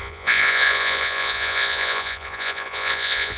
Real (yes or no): no